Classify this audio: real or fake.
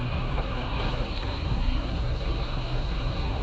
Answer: fake